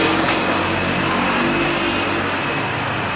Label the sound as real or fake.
real